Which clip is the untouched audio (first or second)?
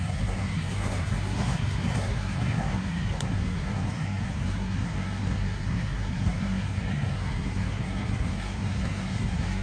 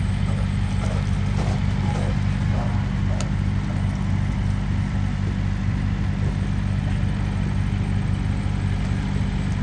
second